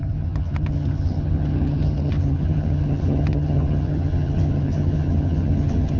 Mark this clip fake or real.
fake